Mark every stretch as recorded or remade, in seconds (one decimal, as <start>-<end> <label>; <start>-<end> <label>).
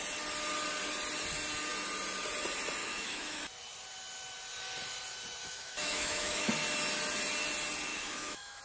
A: 0.0-2.8 recorded; 2.8-3.4 remade; 3.4-5.4 recorded; 5.4-6.5 remade; 6.5-7.9 recorded; 7.9-8.6 remade